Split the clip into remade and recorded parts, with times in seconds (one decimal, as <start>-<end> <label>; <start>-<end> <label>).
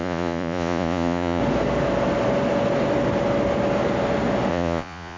0.0-1.4 remade; 1.4-4.5 recorded; 4.5-5.2 remade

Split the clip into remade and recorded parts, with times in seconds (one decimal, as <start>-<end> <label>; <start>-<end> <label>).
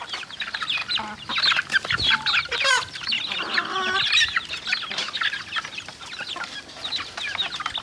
0.0-7.8 recorded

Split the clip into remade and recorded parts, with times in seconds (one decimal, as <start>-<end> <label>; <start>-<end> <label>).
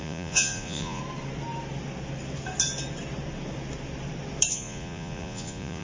0.0-1.0 remade; 1.0-4.5 recorded; 4.5-5.8 remade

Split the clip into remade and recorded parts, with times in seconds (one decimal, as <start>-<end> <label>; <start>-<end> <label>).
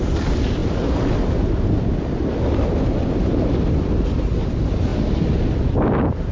0.0-6.3 recorded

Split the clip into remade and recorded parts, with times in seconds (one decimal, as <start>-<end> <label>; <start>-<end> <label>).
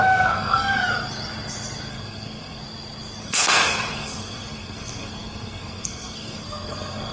0.0-0.8 remade; 0.8-1.9 recorded; 1.9-2.6 remade; 2.6-3.2 recorded; 3.2-7.1 remade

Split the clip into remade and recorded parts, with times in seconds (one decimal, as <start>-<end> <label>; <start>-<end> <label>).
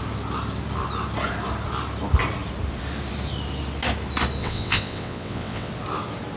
0.0-4.4 recorded; 4.4-5.7 remade; 5.7-6.4 recorded